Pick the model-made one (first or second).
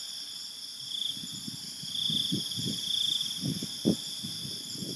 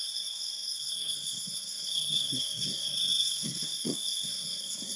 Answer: second